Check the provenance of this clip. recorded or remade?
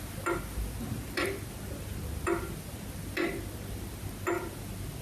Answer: recorded